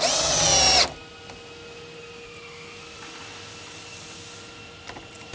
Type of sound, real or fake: real